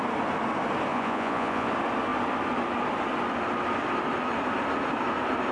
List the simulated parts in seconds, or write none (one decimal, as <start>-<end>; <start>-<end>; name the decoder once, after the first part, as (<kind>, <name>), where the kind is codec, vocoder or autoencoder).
0.9-1.7 (vocoder, Vocos)